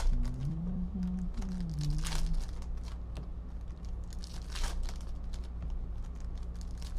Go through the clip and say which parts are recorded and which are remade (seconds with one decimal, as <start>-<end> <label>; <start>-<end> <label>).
0.0-0.4 recorded; 0.4-1.4 remade; 1.4-3.3 recorded; 3.3-3.8 remade; 3.8-7.0 recorded